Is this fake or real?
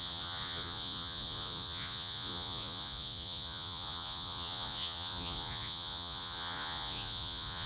fake